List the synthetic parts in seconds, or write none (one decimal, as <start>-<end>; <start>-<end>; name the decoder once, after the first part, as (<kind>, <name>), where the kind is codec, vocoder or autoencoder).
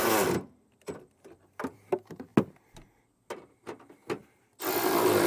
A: none